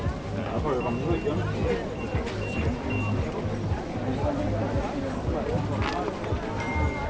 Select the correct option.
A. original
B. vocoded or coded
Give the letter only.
A